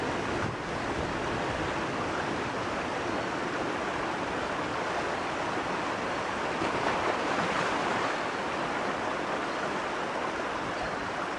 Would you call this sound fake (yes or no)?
no